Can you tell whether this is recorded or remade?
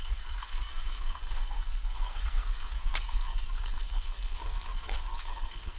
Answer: remade